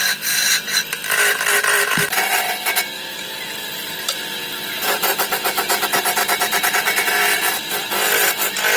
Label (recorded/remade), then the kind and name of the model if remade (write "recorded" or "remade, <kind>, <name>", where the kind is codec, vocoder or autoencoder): recorded